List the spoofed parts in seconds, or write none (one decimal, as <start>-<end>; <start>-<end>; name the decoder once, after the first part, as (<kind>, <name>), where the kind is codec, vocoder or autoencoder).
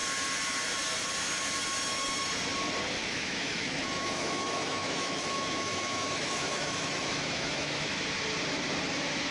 3.0-8.0 (autoencoder, DAC-VAE)